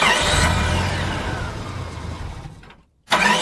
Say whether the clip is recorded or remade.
recorded